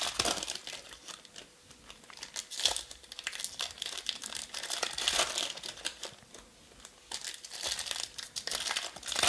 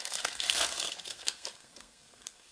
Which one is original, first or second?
first